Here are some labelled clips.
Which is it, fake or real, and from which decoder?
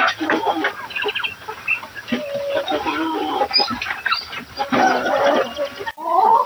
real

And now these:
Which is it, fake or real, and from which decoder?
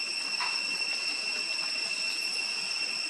real